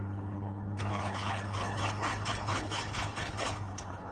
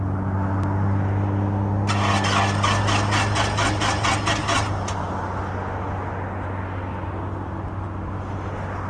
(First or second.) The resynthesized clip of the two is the first